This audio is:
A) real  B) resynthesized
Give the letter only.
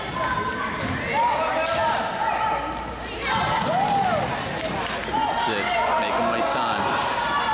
A